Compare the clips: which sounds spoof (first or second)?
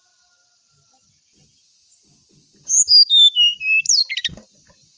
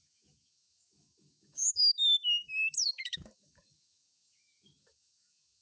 second